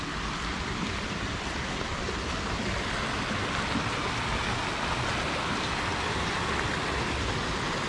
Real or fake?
real